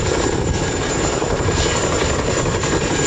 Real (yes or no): yes